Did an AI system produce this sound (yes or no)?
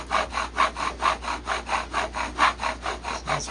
no